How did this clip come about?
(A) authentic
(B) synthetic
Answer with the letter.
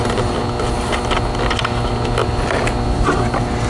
A